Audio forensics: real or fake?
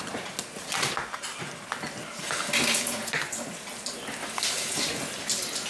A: real